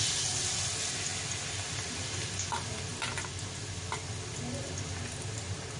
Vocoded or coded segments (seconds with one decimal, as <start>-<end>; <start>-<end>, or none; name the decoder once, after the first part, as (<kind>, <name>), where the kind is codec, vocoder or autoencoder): none